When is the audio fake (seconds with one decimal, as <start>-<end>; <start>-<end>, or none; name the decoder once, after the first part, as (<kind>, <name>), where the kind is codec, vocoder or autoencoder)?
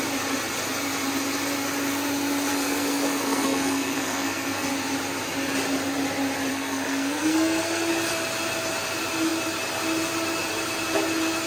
2.5-4.7 (codec, SNAC); 6.5-7.9